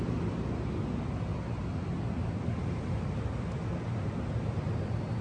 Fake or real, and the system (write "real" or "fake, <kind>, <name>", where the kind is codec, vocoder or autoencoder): real